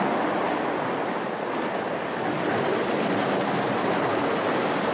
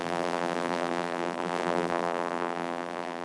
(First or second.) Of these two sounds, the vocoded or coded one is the second